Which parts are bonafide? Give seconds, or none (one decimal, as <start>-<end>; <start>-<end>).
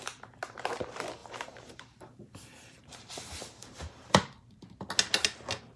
0.0-1.2; 4.7-5.8